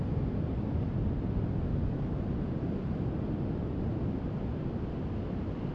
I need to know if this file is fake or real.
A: real